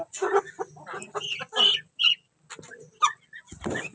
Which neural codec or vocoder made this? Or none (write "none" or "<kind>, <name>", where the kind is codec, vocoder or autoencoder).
none